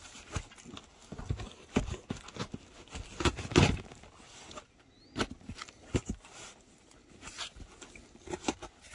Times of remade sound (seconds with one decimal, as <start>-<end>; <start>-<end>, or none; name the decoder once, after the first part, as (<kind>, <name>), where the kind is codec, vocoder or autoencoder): none